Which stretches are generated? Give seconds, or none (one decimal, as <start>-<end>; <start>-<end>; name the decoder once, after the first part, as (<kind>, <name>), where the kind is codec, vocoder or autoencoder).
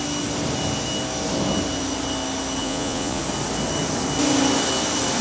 2.6-3.2 (vocoder, Vocos)